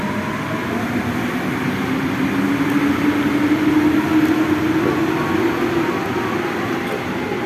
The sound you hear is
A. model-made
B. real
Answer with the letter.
B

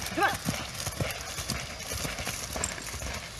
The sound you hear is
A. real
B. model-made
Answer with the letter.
A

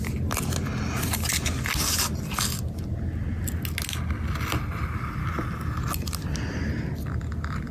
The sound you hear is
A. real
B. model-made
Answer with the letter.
A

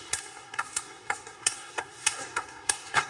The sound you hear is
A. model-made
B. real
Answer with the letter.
A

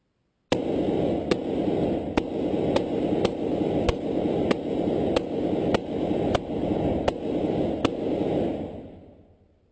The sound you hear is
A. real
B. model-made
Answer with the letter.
A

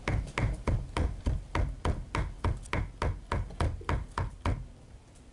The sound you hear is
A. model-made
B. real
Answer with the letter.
B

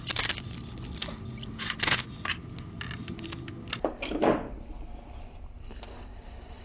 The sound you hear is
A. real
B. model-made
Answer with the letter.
A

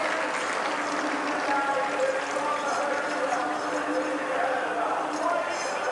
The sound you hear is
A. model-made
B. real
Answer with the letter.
B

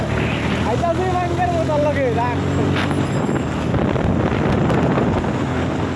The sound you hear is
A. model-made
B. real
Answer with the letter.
B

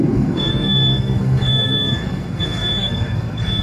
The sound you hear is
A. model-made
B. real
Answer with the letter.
A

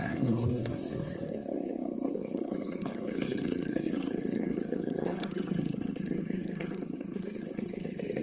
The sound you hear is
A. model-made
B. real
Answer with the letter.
A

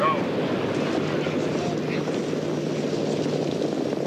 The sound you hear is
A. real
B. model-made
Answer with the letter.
A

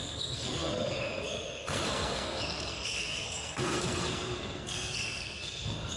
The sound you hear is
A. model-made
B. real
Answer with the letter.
A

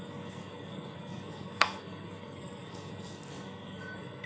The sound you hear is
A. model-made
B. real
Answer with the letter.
A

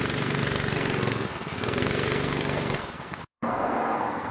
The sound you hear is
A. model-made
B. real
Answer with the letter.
A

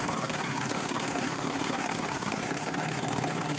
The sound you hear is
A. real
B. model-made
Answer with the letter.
B